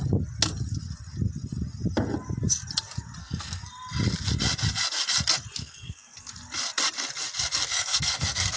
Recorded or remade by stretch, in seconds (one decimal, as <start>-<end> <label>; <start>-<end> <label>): 0.0-3.2 recorded; 3.2-3.7 remade; 3.7-5.6 recorded; 5.6-6.3 remade; 6.3-7.7 recorded; 7.7-8.6 remade